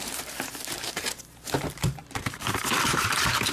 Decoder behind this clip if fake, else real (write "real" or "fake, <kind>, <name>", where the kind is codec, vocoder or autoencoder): fake, vocoder, BigVGAN v2